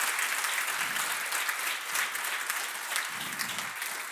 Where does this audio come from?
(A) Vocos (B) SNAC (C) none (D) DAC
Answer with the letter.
C